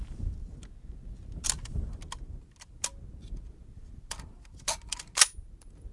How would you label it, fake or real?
real